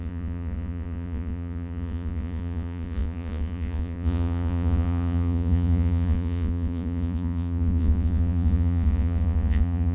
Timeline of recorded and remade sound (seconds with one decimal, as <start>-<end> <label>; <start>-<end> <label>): 0.0-9.9 remade